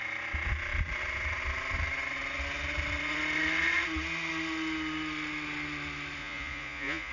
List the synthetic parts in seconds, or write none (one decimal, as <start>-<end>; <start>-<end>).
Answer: 6.2-7.1